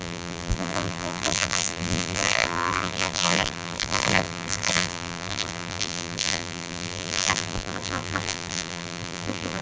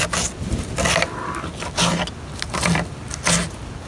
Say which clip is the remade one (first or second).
first